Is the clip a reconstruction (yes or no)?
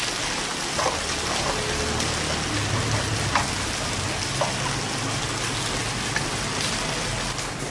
no